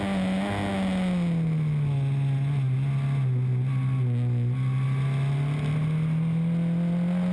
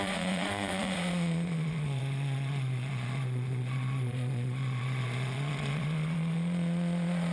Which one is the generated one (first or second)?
second